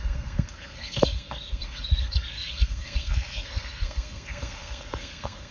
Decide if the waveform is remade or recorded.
remade